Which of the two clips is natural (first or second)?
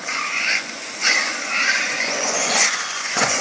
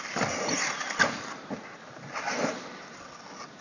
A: second